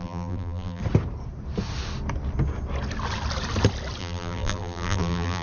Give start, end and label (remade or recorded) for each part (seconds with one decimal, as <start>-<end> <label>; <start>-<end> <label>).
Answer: 0.0-0.8 remade; 0.8-4.0 recorded; 4.0-5.4 remade